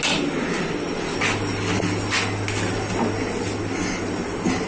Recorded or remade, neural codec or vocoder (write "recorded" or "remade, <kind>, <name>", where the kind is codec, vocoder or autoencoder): recorded